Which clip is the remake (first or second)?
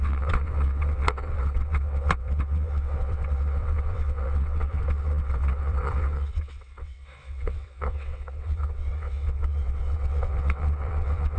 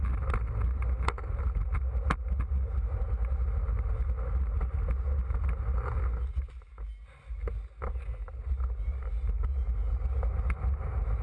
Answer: first